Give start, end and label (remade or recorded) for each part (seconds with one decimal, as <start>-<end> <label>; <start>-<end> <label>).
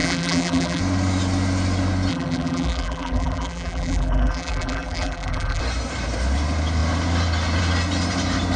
0.0-0.8 remade; 0.8-2.1 recorded; 2.1-5.6 remade; 5.6-8.6 recorded